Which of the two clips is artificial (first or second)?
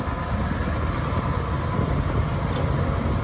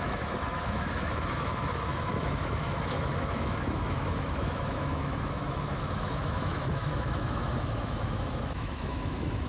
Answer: second